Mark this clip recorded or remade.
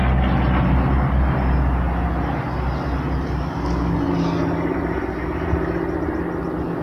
recorded